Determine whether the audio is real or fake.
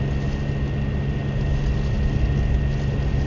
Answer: real